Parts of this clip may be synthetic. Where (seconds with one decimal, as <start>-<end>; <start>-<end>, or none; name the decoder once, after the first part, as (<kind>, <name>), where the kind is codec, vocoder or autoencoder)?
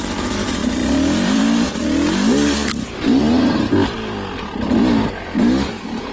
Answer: 0.6-1.7 (vocoder, BigVGAN v2)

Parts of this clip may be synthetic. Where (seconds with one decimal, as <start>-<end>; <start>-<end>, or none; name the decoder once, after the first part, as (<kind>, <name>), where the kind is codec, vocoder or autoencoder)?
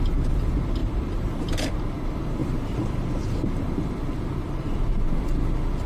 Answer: 0.8-1.7 (vocoder, BigVGAN v2); 2.4-3.0; 4.4-5.0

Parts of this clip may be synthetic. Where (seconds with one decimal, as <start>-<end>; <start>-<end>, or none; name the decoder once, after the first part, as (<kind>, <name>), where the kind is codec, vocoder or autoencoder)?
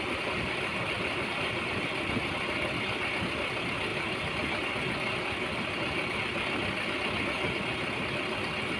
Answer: 0.7-1.8 (vocoder, BigVGAN v2)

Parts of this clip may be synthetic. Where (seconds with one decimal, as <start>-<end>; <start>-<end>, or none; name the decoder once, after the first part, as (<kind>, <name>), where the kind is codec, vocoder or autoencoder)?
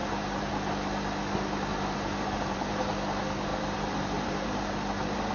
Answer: 0.0-0.5 (vocoder, BigVGAN v2); 1.7-2.8; 3.5-4.7